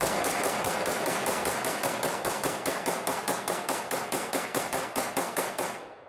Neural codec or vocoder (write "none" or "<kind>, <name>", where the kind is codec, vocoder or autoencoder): codec, SNAC